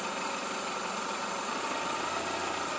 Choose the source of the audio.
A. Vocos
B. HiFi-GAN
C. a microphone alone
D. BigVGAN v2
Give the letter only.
C